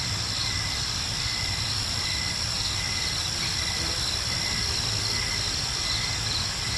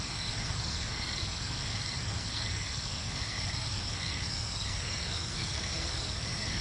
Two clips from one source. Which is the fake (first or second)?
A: second